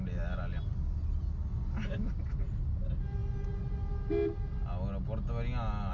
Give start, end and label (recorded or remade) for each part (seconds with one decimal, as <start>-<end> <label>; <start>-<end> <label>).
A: 0.0-5.9 recorded